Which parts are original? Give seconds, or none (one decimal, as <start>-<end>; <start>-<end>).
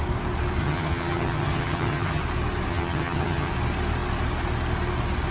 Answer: 0.0-0.6; 2.2-2.7; 3.5-5.3